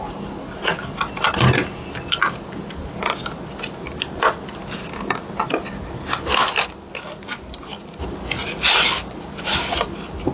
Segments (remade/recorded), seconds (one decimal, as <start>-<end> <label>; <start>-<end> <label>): 0.0-10.3 recorded